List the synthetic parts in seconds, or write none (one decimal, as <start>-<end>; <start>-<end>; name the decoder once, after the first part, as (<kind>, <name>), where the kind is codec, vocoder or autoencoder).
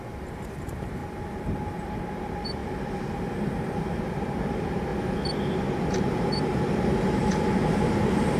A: 0.0-2.6 (vocoder, BigVGAN v2); 3.2-4.9; 6.0-8.4